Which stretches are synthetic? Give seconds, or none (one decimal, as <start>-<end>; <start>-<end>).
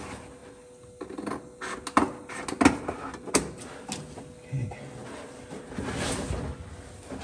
5.0-5.7